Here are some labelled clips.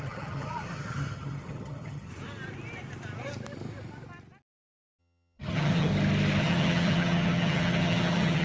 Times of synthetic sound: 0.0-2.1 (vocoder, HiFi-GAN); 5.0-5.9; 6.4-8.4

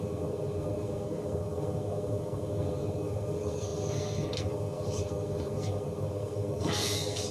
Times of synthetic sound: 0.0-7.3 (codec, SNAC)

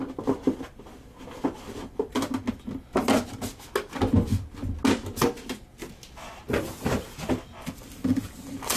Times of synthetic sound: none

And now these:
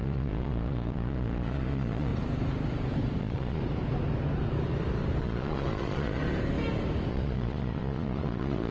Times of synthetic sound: 0.0-2.1 (vocoder, Vocos); 3.2-3.6; 5.2-6.2; 7.1-8.7

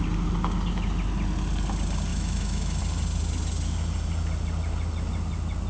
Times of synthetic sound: 2.1-2.8 (autoencoder, DAC-VAE)

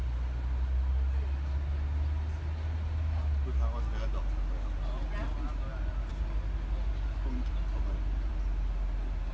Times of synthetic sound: none

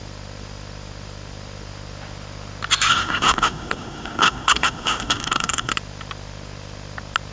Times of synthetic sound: 2.9-5.7 (codec, SNAC)

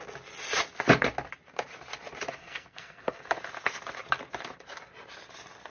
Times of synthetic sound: 2.4-3.2 (codec, SNAC)